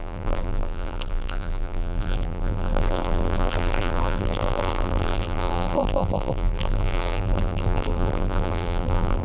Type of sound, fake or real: fake